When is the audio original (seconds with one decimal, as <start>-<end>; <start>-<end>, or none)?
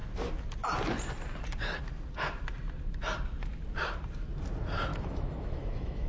0.0-4.9